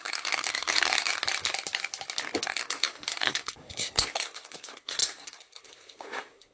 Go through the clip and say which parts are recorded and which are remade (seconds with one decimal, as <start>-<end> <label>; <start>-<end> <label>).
0.0-1.1 remade; 1.1-2.4 recorded; 2.4-6.5 remade